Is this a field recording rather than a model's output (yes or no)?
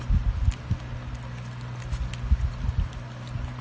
yes